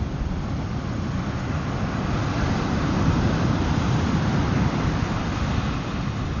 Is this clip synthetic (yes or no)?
no